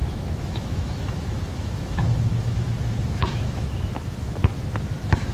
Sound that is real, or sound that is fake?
fake